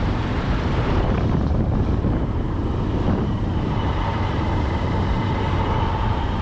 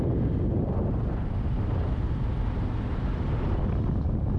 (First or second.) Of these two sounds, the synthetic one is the first